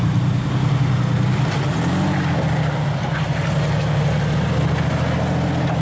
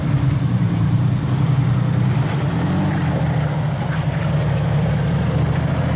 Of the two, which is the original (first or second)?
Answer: first